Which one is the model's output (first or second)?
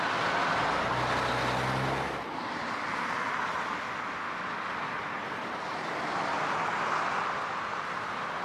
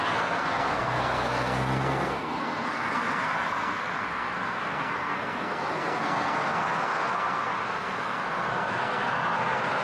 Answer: second